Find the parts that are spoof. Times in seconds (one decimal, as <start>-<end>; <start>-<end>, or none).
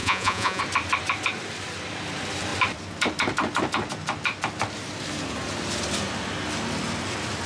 0.0-0.6